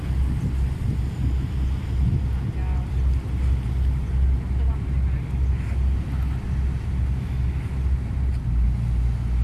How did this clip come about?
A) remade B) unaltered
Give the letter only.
B